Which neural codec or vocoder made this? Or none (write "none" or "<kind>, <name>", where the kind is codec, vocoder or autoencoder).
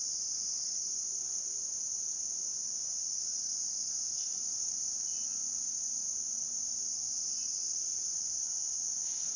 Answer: vocoder, Vocos